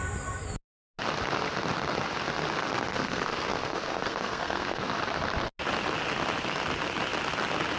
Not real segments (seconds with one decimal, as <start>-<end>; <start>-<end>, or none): 2.9-5.0